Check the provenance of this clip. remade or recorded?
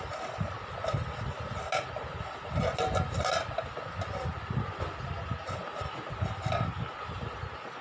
recorded